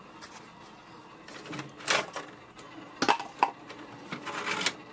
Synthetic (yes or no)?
no